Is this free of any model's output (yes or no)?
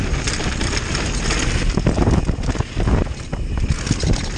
yes